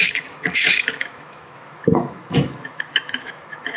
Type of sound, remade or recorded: remade